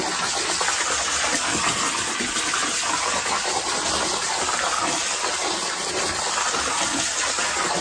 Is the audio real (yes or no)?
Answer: yes